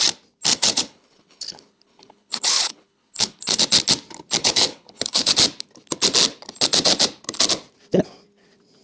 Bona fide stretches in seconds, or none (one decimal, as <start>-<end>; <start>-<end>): 0.0-0.5; 3.6-4.4; 5.3-8.8

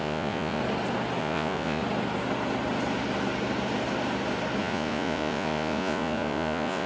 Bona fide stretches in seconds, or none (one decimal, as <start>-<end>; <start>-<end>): 0.6-1.2; 1.8-4.6

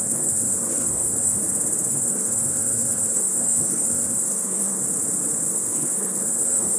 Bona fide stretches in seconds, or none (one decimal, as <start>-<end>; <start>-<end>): 1.4-1.9; 4.8-5.5

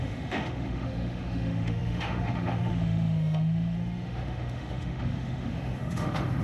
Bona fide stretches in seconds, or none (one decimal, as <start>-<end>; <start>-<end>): none

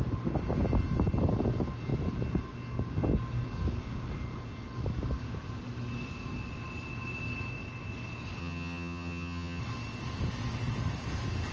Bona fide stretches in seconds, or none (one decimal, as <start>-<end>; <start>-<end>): 0.0-8.4; 9.6-11.5